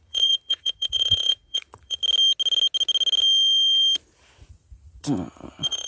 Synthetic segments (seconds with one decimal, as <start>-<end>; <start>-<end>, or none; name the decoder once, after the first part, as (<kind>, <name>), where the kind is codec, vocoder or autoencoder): 0.0-2.0 (vocoder, Vocos); 4.4-5.9